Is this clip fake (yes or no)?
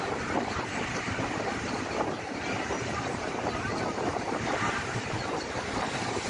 yes